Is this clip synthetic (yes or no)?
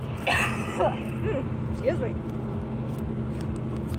no